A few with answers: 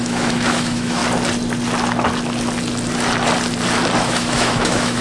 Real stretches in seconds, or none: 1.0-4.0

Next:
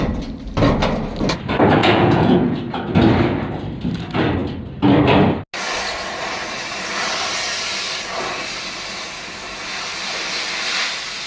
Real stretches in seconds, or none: 0.0-1.8; 2.6-11.3

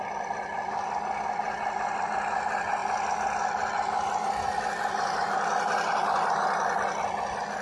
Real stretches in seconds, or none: 0.0-7.6

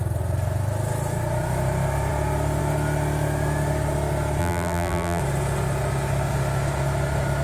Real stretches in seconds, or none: 0.0-4.4; 5.2-7.4